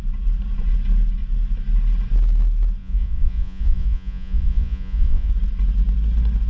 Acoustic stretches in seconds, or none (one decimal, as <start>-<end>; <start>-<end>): 0.0-2.8; 5.3-6.5

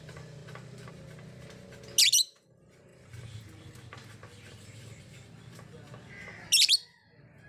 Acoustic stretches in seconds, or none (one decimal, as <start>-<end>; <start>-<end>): 0.0-2.9; 3.7-7.5

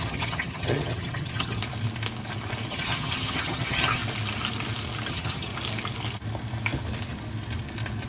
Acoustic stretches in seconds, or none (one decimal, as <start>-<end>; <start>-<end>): 1.6-2.7; 4.0-5.1; 5.5-8.1

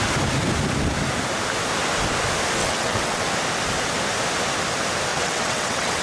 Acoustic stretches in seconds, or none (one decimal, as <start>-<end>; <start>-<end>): 0.0-2.6; 3.2-5.1

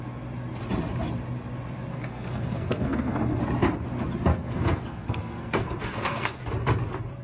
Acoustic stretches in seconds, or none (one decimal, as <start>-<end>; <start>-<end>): 0.0-1.9; 3.4-4.3; 6.4-7.2